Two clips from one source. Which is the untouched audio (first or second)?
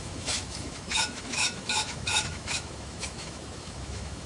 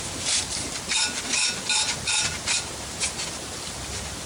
second